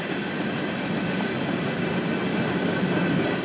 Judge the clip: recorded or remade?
recorded